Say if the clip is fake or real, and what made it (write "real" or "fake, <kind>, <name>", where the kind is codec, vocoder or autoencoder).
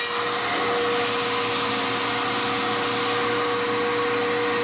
real